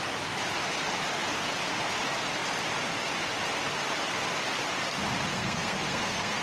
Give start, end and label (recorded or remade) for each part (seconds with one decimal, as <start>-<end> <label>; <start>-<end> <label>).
0.0-5.3 recorded; 5.3-6.4 remade